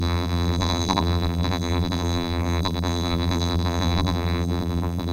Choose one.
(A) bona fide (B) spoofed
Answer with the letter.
B